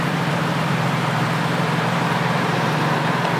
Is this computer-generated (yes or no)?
yes